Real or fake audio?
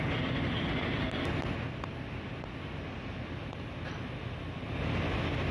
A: real